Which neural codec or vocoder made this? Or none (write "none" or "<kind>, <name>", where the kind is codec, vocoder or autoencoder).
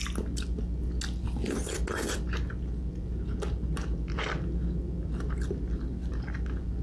none